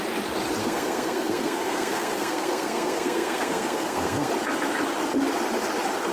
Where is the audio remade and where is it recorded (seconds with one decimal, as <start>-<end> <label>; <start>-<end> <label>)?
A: 0.0-0.6 recorded; 0.6-4.3 remade; 4.3-6.1 recorded